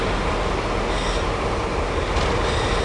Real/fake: real